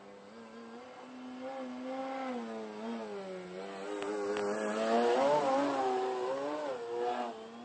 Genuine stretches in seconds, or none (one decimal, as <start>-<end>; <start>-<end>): 0.0-7.6